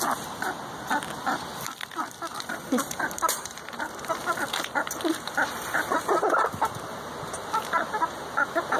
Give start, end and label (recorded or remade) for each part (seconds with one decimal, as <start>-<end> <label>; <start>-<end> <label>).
0.0-2.3 recorded; 2.3-4.1 remade; 4.1-8.8 recorded